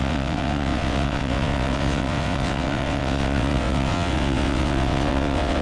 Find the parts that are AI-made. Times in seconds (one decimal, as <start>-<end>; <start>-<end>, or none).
0.0-5.6

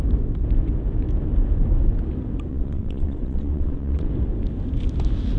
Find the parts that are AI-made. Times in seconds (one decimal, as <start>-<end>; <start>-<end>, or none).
2.5-4.1

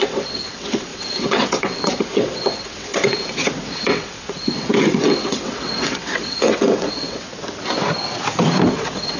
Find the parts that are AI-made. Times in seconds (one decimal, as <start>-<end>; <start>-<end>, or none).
0.0-7.3; 8.7-9.2

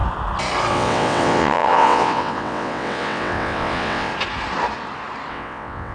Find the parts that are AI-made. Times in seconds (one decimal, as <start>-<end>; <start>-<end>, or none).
0.7-4.1; 5.3-5.9

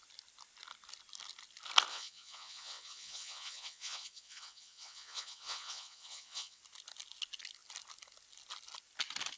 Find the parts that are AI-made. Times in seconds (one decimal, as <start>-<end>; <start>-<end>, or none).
1.9-6.6

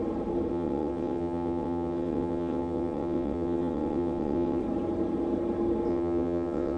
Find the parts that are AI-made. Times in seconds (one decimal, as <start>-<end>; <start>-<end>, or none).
0.5-4.6; 5.9-6.8

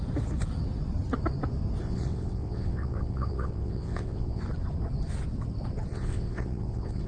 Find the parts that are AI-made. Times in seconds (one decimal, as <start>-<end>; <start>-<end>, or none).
1.8-4.4; 5.9-7.1